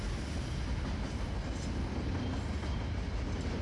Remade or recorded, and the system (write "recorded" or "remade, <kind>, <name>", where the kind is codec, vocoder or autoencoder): recorded